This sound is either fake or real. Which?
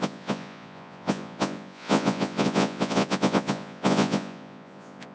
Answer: fake